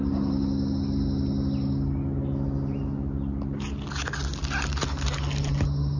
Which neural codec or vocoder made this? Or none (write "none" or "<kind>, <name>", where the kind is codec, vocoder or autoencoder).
none